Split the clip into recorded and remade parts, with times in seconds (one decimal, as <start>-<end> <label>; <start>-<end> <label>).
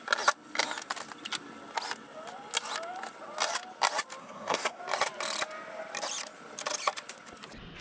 0.0-4.2 recorded; 4.2-4.8 remade; 4.8-7.8 recorded